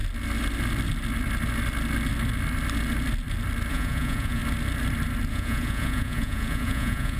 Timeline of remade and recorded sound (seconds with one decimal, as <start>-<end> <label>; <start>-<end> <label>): 0.0-3.7 recorded; 3.7-4.4 remade; 4.4-5.3 recorded; 5.3-7.2 remade